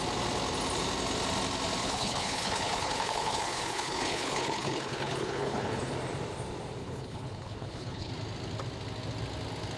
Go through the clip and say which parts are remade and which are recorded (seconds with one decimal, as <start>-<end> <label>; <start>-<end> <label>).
0.0-1.8 recorded; 1.8-5.9 remade; 5.9-6.8 recorded; 6.8-8.1 remade; 8.1-9.8 recorded